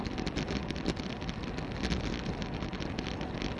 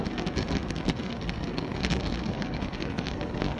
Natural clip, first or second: first